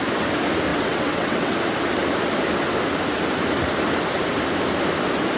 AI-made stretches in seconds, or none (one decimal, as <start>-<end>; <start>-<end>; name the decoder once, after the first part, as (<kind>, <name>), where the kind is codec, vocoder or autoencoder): 0.7-1.5 (vocoder, WaveNeXt)